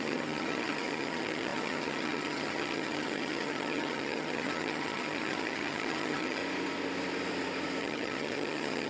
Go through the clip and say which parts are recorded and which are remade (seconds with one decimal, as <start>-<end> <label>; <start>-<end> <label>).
0.0-6.4 remade; 6.4-7.8 recorded; 7.8-8.9 remade